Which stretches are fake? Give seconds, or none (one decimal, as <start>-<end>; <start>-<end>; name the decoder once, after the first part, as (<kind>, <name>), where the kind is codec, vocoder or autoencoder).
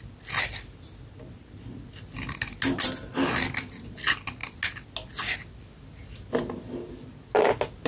none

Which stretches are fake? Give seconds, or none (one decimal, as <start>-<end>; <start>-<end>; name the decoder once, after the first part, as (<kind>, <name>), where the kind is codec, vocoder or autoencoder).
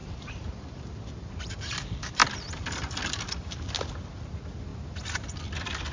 0.0-1.5 (vocoder, BigVGAN v2)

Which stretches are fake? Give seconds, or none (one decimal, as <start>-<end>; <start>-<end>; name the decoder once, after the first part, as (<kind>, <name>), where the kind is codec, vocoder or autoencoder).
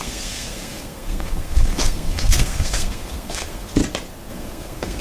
0.0-3.8 (codec, SNAC); 4.3-5.0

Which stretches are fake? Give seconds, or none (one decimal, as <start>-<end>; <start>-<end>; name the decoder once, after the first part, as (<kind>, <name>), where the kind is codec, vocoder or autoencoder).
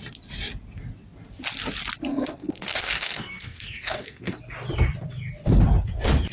2.1-4.4 (codec, SNAC)